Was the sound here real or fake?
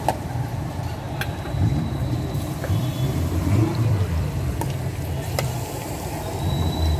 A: fake